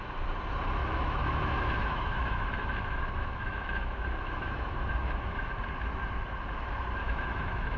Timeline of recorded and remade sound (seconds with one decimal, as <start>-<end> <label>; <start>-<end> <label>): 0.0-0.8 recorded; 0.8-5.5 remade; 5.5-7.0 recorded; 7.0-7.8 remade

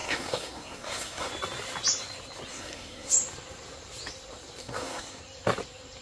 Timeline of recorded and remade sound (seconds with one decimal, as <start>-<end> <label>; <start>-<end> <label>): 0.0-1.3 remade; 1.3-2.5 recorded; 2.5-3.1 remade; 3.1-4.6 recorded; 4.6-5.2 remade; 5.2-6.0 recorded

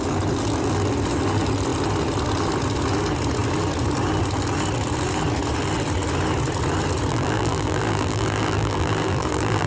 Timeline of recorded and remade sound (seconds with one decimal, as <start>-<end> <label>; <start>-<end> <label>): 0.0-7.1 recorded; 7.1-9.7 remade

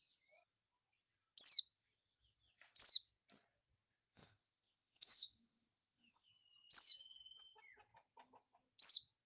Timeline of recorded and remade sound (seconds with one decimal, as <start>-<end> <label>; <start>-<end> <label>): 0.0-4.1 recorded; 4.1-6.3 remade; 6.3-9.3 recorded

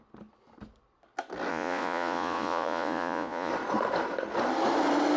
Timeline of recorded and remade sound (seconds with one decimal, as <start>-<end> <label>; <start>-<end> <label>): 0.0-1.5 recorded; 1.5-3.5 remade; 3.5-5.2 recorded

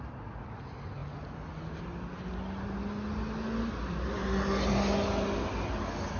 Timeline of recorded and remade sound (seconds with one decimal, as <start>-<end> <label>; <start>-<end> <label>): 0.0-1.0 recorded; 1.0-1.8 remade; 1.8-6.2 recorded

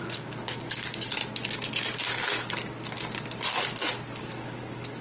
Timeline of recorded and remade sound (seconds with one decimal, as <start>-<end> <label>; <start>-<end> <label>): 0.0-1.2 remade; 1.2-4.2 recorded; 4.2-5.0 remade

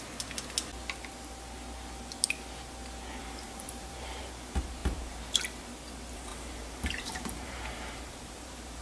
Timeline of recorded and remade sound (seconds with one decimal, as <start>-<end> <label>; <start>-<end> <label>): 0.0-3.2 recorded; 3.2-4.2 remade; 4.2-4.8 recorded; 4.8-5.6 remade; 5.6-6.3 recorded; 6.3-8.8 remade